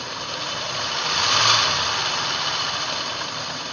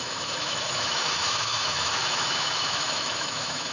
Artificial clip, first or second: second